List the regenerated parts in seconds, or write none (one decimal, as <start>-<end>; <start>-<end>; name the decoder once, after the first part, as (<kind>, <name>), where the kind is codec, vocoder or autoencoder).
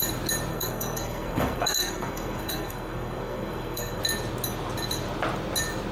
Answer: 0.5-4.0 (codec, SNAC)